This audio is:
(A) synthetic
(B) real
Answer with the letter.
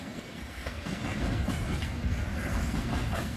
A